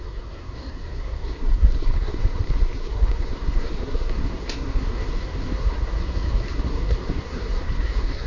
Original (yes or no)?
no